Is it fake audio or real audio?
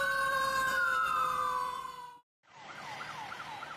fake